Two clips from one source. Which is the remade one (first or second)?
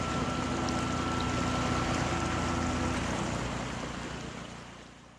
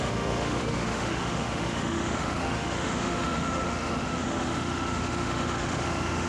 second